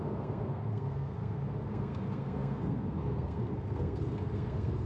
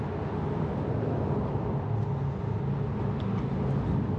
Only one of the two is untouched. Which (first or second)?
second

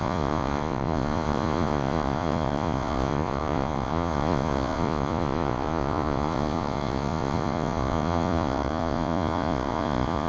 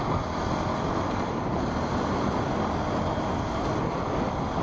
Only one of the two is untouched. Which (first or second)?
second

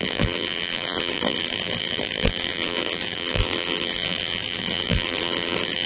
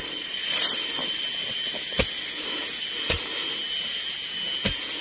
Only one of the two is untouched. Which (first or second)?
second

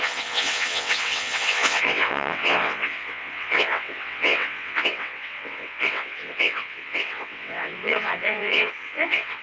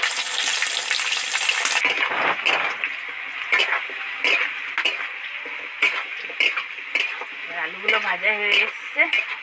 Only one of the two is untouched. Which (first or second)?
second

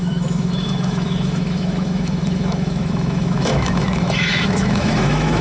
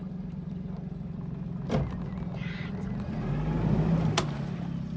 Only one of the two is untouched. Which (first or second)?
second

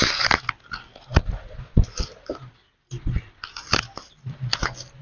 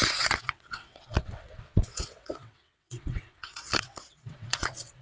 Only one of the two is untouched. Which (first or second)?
first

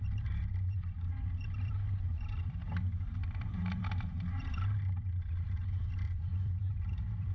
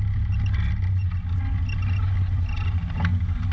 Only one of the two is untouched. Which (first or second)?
second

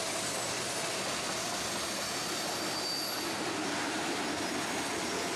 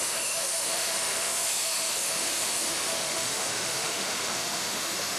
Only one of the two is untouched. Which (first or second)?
first